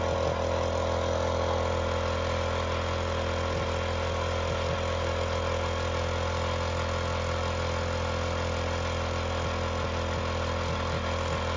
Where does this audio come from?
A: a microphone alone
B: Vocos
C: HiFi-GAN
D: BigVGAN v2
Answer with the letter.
A